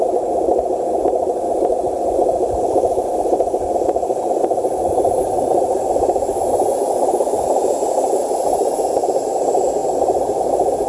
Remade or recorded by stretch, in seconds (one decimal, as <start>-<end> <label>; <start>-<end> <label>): 0.0-10.9 remade